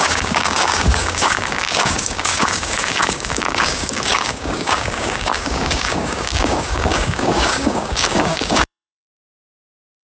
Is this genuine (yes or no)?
no